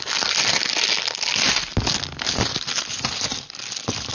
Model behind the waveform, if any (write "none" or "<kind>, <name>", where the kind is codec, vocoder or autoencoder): none